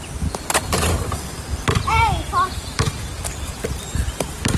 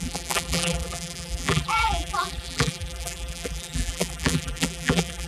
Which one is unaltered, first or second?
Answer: first